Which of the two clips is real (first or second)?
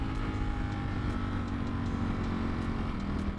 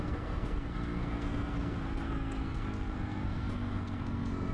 first